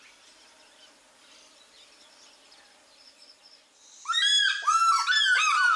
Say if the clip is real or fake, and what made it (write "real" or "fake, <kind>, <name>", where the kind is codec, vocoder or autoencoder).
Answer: real